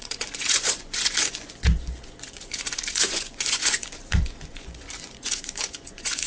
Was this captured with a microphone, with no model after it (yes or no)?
no